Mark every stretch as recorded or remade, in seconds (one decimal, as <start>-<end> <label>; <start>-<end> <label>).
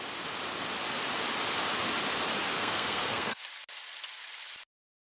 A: 0.0-2.5 recorded; 2.5-3.4 remade; 3.4-5.0 recorded